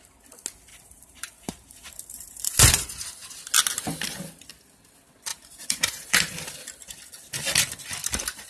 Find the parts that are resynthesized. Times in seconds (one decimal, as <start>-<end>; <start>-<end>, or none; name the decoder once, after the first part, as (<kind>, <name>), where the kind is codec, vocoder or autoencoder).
0.7-2.7 (vocoder, BigVGAN v2); 5.3-6.5

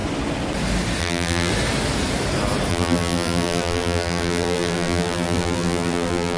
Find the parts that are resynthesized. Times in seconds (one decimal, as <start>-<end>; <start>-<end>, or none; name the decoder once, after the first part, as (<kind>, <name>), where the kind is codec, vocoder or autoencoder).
1.0-1.5 (vocoder, BigVGAN v2); 2.7-6.4

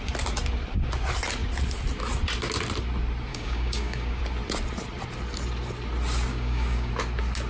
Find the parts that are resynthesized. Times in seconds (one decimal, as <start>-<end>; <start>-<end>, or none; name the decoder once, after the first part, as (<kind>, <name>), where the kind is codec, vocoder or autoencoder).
3.3-4.2 (codec, DAC); 6.3-6.9

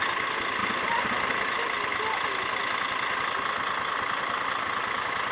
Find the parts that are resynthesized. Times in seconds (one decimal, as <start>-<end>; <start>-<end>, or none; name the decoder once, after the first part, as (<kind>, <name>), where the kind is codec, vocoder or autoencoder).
0.6-1.4 (vocoder, BigVGAN v2)